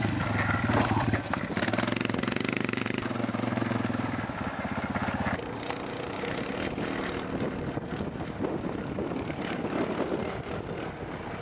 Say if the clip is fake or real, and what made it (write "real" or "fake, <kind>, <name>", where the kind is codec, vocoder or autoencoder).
real